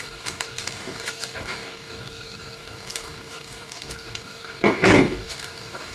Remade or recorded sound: remade